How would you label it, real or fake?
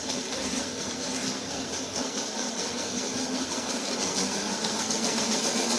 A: fake